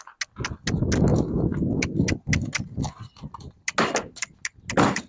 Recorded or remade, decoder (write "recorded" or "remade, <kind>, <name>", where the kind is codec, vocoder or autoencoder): recorded